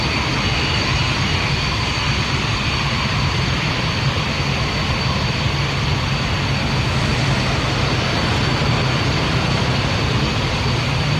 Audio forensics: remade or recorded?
recorded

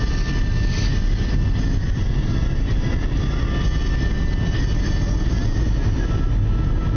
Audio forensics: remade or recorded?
recorded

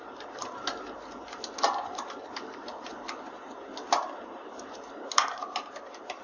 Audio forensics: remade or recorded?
recorded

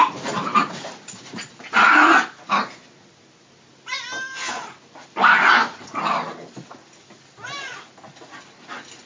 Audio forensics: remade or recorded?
recorded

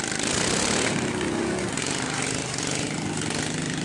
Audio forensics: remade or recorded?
recorded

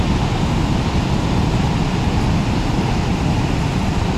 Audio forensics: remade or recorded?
recorded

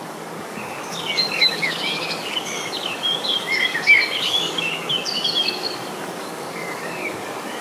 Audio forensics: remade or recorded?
remade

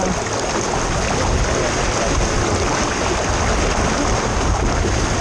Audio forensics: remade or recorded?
recorded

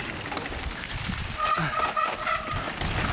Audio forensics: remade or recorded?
recorded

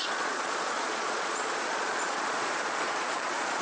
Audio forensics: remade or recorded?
remade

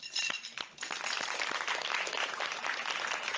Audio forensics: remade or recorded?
recorded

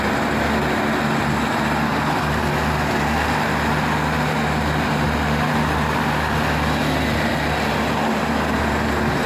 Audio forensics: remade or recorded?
recorded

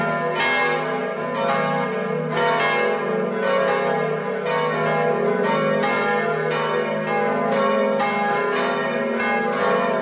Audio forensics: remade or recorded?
recorded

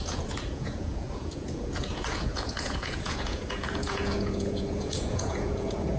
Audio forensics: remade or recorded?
remade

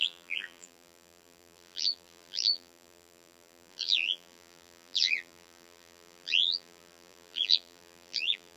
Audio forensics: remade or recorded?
remade